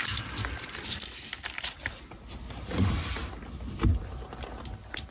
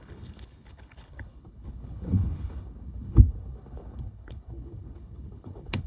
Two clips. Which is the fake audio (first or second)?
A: second